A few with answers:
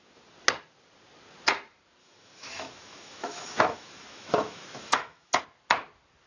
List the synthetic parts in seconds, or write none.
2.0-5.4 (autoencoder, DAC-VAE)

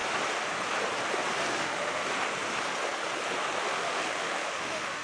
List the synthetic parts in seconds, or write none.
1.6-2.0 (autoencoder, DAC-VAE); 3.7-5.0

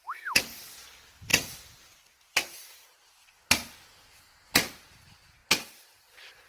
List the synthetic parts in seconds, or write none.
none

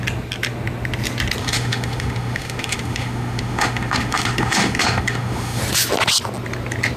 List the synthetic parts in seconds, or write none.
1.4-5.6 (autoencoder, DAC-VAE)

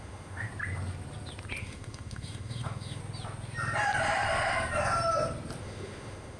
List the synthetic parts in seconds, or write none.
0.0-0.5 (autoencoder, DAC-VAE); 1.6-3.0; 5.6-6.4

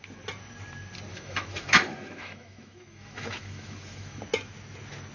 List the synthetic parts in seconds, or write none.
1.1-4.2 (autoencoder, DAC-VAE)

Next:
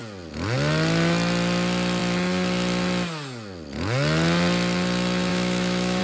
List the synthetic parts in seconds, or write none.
5.3-6.0 (autoencoder, DAC-VAE)